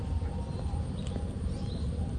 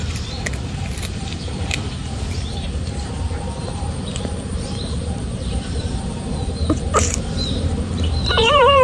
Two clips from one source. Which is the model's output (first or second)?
second